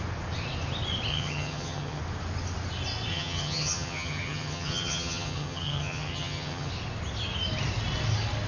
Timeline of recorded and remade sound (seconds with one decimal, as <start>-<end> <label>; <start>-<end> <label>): 0.0-1.1 recorded; 1.1-2.0 remade; 2.0-3.1 recorded; 3.1-6.7 remade; 6.7-8.5 recorded